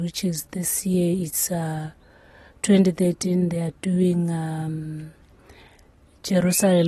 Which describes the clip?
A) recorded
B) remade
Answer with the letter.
A